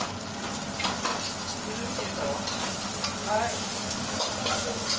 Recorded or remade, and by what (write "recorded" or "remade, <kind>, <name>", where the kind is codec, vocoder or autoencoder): recorded